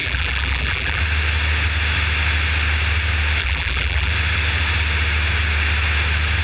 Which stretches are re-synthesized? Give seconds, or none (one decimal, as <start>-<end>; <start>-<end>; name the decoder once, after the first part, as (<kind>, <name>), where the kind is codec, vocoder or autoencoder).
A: 0.0-1.0 (vocoder, BigVGAN v2); 3.4-4.1